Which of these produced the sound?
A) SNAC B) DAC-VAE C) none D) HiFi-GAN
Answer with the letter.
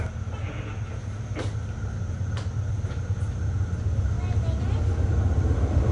C